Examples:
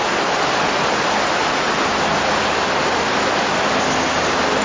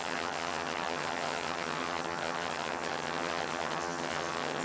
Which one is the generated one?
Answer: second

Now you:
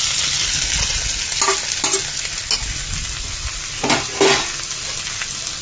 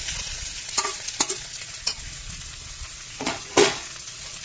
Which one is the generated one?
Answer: second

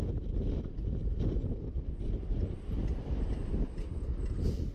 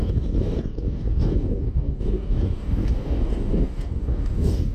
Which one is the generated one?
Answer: second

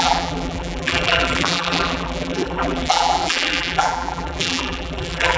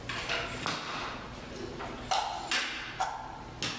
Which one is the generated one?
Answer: first